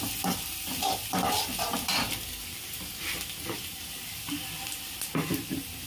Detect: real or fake real